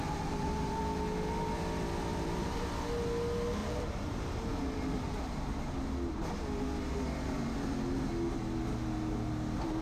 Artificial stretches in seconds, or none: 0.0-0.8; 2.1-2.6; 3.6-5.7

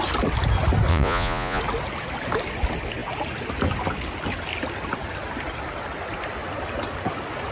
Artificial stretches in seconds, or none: 0.9-1.6

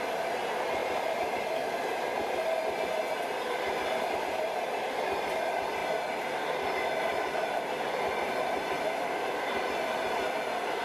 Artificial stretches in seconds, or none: 0.0-0.8; 4.1-10.8

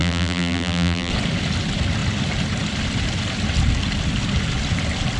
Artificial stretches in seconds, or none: 0.0-1.1

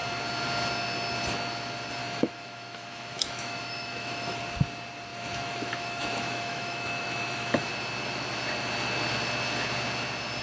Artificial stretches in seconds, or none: 2.0-4.4; 5.1-7.7

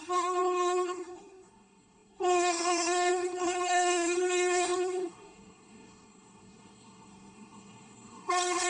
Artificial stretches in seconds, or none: 0.0-8.7

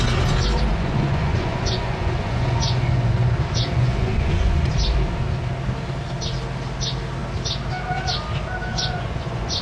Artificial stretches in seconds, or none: 0.7-4.7; 8.7-9.6

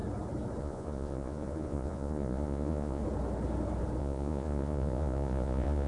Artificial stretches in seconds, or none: 0.6-3.0; 4.0-5.9